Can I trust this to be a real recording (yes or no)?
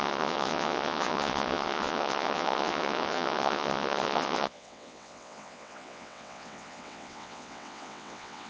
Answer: no